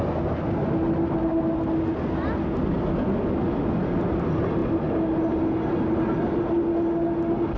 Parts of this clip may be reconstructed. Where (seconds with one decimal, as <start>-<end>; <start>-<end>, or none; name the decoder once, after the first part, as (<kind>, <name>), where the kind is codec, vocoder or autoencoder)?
none